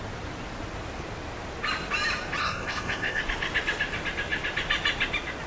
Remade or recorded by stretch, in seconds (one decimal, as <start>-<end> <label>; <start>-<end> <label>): 0.0-2.4 recorded; 2.4-3.2 remade; 3.2-5.5 recorded